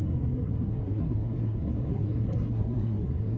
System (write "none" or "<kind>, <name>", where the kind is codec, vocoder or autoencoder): codec, SNAC